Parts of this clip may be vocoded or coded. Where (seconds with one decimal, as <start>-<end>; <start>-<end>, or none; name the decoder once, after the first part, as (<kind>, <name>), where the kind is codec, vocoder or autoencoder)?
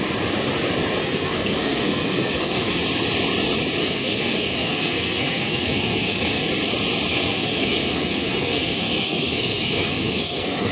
1.0-2.8 (codec, SNAC); 3.8-6.4; 7.1-10.7